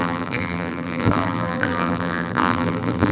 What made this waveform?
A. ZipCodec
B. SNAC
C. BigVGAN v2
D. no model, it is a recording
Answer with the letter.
C